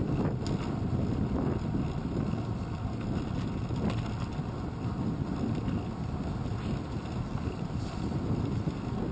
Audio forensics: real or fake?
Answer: real